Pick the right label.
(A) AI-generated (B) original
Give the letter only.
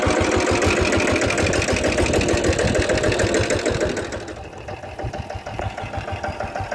B